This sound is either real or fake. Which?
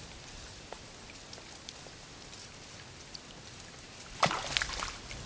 real